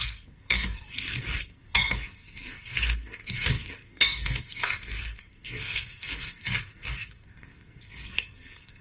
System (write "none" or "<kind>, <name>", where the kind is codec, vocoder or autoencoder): codec, SNAC